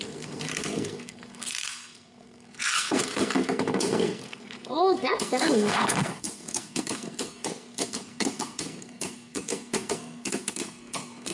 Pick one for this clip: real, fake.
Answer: fake